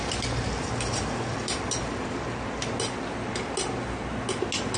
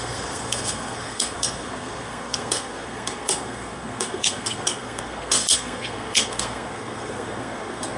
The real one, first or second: first